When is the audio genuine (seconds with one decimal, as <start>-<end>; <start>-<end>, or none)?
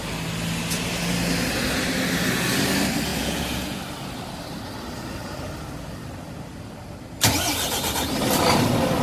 0.0-3.1; 3.8-9.0